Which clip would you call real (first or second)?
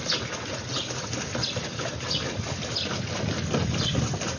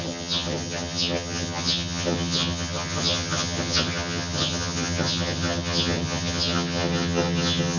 first